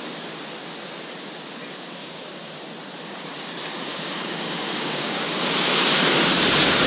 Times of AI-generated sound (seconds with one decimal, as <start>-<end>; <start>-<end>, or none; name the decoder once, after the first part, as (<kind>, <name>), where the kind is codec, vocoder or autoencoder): 2.0-2.6 (codec, DAC); 3.9-5.4